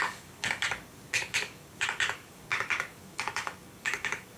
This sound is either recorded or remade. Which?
remade